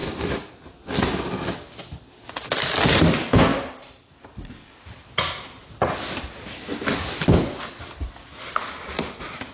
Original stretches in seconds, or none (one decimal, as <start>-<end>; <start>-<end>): 0.0-3.5; 6.0-9.5